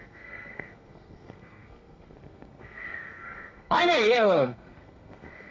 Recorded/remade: remade